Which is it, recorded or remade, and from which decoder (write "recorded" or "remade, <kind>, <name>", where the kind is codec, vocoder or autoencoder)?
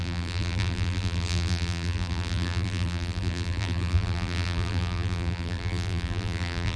remade, vocoder, BigVGAN v2